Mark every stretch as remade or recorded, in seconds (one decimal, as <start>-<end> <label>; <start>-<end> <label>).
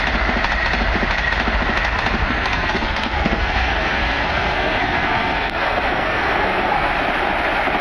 0.0-2.2 recorded; 2.2-6.9 remade; 6.9-7.8 recorded